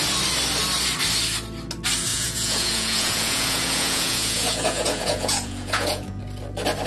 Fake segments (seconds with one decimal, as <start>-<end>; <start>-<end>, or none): 2.1-6.2